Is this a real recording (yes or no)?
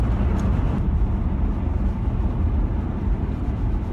yes